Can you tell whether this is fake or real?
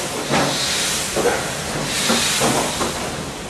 real